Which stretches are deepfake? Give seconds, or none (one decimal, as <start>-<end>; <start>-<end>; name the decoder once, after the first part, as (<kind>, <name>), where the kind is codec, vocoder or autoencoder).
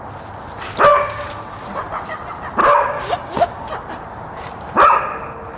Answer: 0.9-1.6 (codec, DAC); 2.6-3.7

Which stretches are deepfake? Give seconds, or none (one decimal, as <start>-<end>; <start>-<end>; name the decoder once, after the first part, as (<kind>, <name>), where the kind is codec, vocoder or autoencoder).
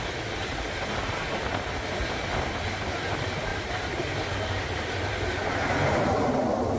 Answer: 3.5-5.1 (vocoder, BigVGAN v2)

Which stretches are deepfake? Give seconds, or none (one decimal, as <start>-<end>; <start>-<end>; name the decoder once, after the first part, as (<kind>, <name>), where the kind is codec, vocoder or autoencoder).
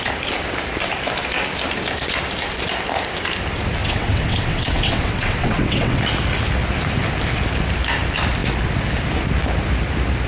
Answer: 3.8-6.0 (vocoder, WaveNeXt)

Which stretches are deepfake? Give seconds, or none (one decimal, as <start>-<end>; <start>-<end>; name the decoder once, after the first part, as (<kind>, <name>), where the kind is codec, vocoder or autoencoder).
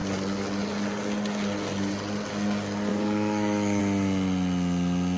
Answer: 2.9-3.8 (codec, DAC)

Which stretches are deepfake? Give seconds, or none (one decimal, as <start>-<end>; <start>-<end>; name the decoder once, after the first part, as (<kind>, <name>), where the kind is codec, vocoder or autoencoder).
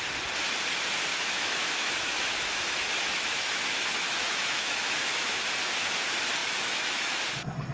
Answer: 1.1-5.4 (autoencoder, DAC-VAE); 6.4-7.2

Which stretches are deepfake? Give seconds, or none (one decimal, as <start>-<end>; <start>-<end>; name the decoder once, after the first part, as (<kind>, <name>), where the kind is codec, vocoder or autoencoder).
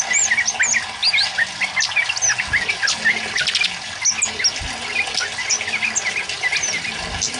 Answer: none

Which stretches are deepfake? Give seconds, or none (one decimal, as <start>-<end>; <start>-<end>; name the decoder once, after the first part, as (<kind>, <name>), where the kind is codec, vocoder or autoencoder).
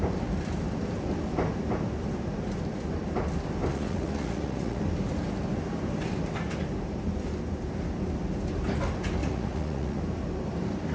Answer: 3.7-4.8 (vocoder, Vocos); 9.2-10.0